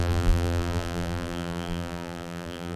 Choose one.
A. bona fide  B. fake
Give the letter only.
B